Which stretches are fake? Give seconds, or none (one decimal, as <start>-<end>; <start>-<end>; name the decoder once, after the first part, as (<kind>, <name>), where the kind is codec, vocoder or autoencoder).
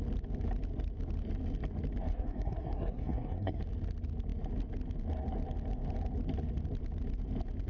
2.1-3.6 (codec, SNAC)